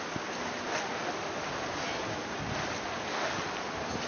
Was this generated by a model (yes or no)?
no